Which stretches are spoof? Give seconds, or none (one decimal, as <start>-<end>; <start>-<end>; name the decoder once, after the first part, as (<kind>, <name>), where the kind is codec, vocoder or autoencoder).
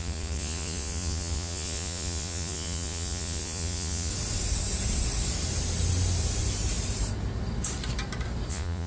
0.0-4.1 (vocoder, Vocos); 8.5-8.9